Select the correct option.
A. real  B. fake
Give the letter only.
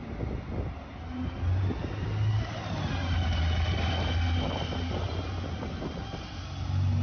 A